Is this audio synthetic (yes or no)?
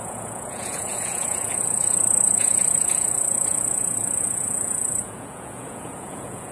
yes